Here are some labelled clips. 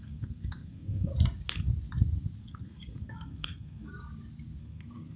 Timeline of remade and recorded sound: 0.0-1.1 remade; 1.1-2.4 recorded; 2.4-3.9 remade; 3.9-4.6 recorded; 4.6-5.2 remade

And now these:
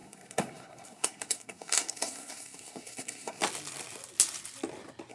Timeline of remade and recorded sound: 0.0-3.4 remade; 3.4-5.1 recorded